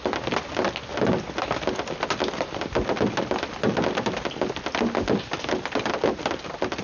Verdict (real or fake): real